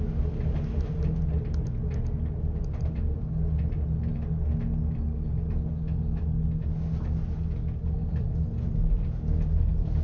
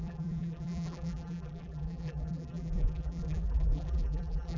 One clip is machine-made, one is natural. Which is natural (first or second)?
first